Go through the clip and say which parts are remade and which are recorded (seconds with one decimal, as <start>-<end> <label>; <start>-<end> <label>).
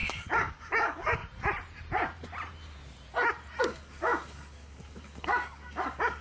0.0-1.2 remade; 1.2-3.6 recorded; 3.6-6.2 remade